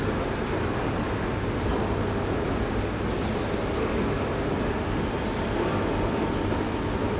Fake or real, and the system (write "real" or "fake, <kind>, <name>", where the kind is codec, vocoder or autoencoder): real